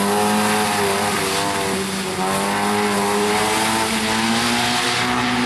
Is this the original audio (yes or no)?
yes